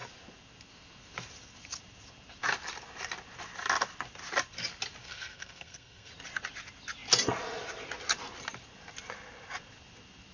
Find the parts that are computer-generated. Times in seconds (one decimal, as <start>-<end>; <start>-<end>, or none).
5.0-6.1